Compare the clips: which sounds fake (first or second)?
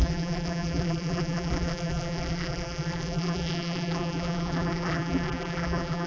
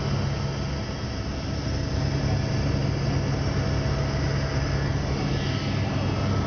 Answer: first